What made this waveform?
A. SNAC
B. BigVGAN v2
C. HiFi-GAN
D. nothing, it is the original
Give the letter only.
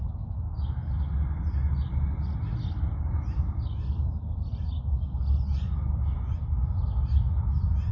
D